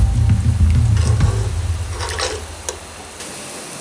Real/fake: real